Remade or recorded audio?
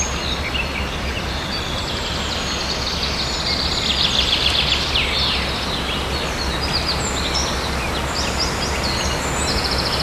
recorded